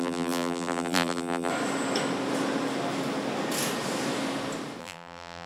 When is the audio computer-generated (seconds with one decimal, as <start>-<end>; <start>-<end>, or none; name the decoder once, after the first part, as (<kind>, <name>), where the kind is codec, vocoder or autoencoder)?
0.0-1.5 (vocoder, BigVGAN v2); 4.8-5.5